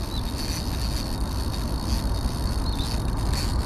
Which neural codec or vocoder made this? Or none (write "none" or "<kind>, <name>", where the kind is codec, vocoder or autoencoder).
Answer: none